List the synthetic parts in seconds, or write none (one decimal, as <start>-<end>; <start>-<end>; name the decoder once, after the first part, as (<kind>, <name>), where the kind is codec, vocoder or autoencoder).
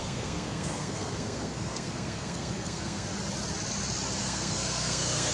0.0-3.1 (codec, SNAC); 4.2-5.3